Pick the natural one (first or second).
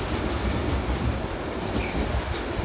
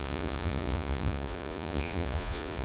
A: first